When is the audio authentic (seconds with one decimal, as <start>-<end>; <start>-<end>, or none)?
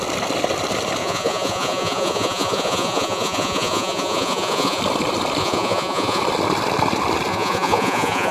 0.0-1.0; 4.8-5.4; 6.2-7.3